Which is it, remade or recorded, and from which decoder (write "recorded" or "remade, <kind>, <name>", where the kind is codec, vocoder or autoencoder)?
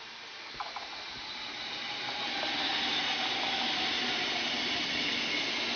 recorded